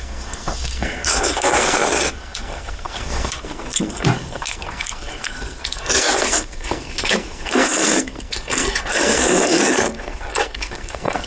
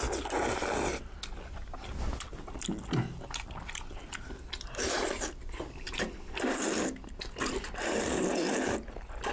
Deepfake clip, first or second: first